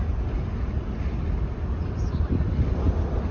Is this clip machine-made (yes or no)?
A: no